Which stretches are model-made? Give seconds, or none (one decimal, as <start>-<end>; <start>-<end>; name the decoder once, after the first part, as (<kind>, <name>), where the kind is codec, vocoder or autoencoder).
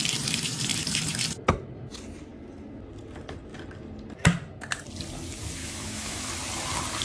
5.6-6.3 (autoencoder, DAC-VAE)